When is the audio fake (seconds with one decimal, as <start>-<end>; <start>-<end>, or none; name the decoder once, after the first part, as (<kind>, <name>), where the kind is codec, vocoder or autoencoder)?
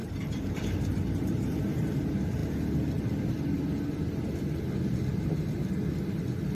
0.0-2.0 (vocoder, BigVGAN v2)